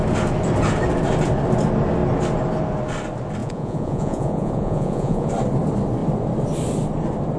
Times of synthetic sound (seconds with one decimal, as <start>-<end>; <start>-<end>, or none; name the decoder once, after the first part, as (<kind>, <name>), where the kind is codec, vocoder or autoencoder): 3.4-5.3 (vocoder, Vocos)